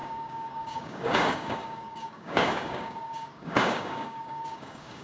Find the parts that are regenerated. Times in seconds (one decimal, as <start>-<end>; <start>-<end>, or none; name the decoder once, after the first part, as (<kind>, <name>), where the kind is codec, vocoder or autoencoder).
0.0-5.0 (codec, DAC)